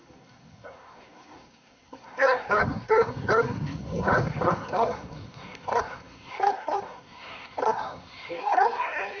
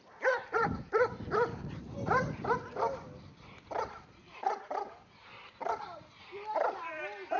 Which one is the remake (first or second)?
first